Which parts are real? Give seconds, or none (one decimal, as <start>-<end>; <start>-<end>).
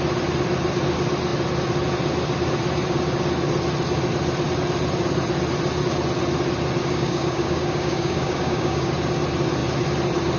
0.0-6.8; 8.9-10.4